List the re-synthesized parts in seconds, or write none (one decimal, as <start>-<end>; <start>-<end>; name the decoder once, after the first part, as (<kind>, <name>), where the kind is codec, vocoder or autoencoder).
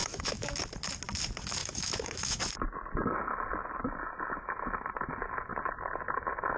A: 0.0-0.6 (autoencoder, DAC-VAE); 1.6-2.4